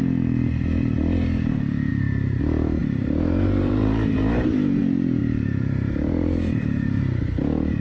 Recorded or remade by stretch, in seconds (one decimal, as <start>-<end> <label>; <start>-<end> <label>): 0.0-1.9 recorded; 1.9-2.4 remade; 2.4-2.8 recorded; 2.8-4.8 remade; 4.8-5.2 recorded; 5.2-7.0 remade; 7.0-7.8 recorded